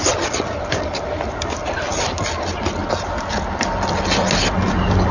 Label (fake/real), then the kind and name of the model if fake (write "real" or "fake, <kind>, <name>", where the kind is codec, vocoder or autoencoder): real